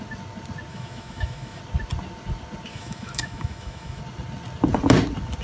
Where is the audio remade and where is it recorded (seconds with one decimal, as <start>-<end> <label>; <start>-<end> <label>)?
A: 0.0-0.7 recorded; 0.7-1.6 remade; 1.6-2.7 recorded; 2.7-4.0 remade; 4.0-5.4 recorded